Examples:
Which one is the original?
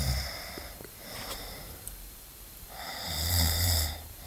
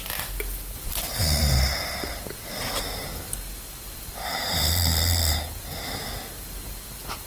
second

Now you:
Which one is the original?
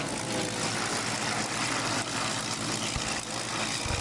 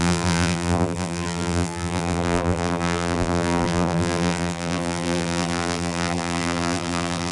first